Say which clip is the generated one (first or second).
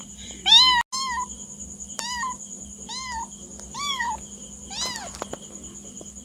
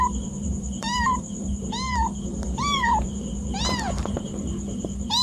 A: second